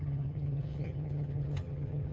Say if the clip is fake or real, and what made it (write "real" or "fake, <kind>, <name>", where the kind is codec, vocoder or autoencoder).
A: fake, vocoder, HiFi-GAN